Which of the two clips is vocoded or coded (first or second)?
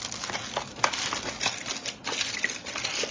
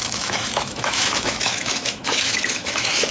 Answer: second